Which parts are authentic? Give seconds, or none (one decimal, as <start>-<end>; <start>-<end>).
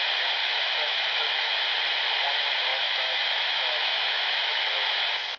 0.0-0.4; 1.6-2.7; 4.7-5.4